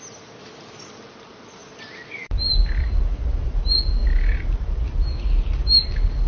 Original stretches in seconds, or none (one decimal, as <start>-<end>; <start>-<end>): 0.0-6.3